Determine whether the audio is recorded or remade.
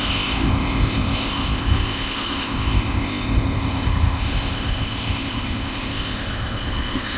remade